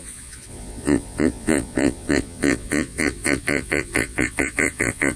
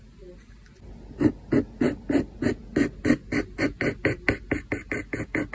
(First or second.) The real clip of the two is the second